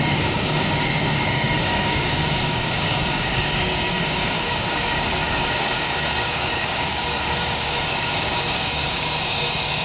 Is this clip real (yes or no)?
no